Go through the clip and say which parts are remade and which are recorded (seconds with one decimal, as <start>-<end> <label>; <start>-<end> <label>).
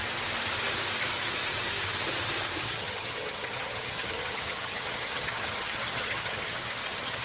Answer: 0.0-2.6 recorded; 2.6-7.2 remade